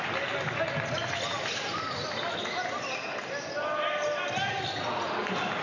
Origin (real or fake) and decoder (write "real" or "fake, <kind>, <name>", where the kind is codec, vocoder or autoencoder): real